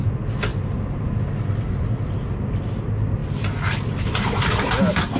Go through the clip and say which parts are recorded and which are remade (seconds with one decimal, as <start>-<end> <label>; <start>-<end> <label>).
0.0-5.2 recorded